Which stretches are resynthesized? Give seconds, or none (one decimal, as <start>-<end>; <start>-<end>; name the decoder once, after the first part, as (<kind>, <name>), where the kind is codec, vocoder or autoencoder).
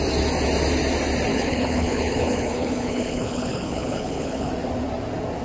1.3-4.5 (codec, HILCodec)